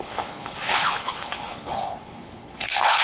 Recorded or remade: remade